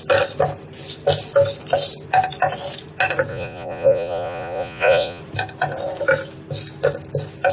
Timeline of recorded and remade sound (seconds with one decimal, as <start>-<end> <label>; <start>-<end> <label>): 0.0-3.3 recorded; 3.3-5.2 remade; 5.2-7.5 recorded